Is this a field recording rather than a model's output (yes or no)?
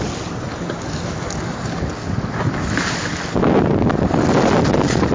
yes